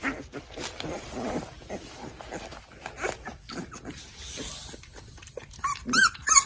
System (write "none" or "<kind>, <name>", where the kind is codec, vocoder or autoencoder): none